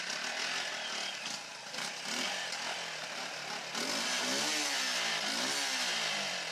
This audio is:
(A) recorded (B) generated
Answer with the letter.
A